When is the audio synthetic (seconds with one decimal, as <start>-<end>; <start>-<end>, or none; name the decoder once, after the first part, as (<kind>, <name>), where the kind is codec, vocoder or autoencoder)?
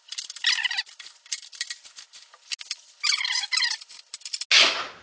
none